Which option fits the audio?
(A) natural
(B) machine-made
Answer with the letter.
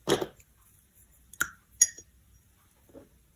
A